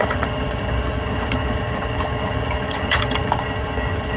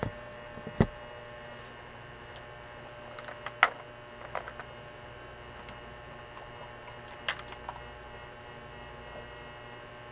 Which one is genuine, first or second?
second